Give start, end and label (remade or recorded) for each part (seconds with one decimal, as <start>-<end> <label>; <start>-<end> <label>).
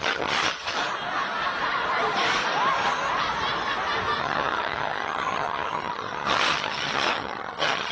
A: 0.0-0.8 remade; 0.8-4.2 recorded; 4.2-7.9 remade